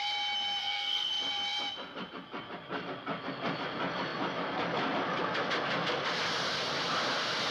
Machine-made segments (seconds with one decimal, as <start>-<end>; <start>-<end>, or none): 0.6-1.1